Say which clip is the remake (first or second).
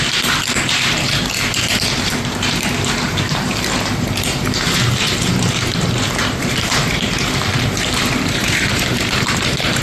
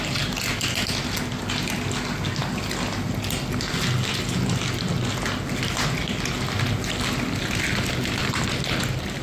first